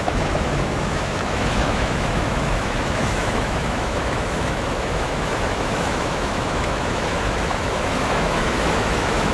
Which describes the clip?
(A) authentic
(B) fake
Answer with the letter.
B